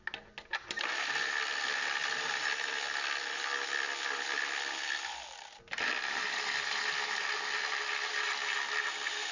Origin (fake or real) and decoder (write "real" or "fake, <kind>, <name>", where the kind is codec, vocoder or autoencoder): real